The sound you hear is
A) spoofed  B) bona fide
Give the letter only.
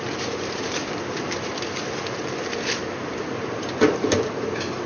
A